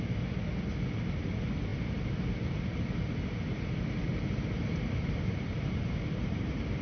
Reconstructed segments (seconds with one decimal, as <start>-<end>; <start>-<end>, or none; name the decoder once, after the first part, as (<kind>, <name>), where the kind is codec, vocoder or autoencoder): 4.1-6.8 (vocoder, BigVGAN v2)